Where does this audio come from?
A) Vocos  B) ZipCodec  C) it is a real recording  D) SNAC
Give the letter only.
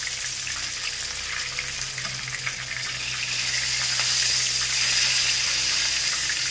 C